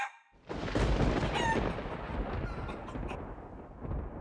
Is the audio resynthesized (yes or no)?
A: no